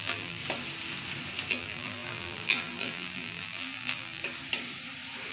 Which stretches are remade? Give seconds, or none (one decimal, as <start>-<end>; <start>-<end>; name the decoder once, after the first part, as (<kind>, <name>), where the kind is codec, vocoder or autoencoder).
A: 0.0-0.4 (vocoder, BigVGAN v2); 1.5-4.2